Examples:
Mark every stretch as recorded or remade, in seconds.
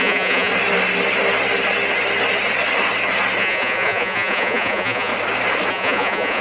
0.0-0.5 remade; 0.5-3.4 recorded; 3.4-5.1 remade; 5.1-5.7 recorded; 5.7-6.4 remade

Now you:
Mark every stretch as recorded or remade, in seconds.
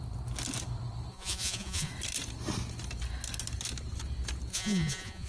0.0-1.1 recorded; 1.1-1.9 remade; 1.9-4.5 recorded; 4.5-5.3 remade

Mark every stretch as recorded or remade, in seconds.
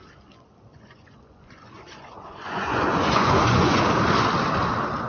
0.0-0.7 recorded; 0.7-3.8 remade; 3.8-5.1 recorded